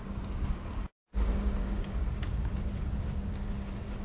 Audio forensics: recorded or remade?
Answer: remade